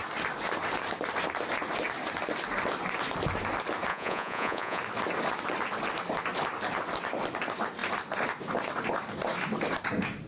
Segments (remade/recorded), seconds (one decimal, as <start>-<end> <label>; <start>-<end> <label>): 0.0-3.9 recorded; 3.9-4.8 remade; 4.8-10.3 recorded